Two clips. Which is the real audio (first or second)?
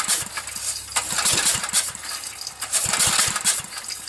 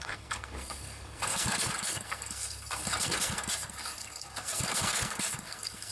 first